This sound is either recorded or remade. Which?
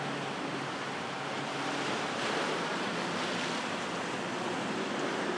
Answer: remade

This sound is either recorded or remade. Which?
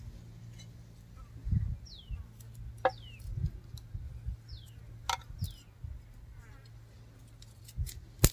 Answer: recorded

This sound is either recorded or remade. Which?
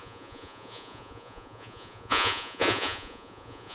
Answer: remade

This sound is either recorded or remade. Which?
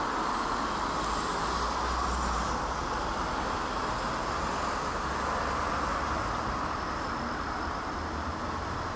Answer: recorded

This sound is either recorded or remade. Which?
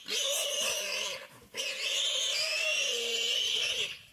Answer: remade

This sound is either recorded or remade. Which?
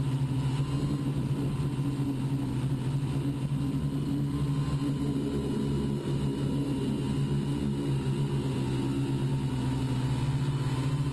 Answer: recorded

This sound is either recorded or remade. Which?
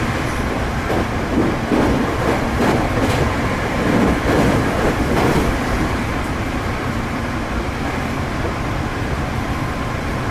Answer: remade